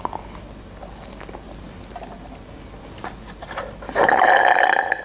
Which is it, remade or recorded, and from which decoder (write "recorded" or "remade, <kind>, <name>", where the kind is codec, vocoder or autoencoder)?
recorded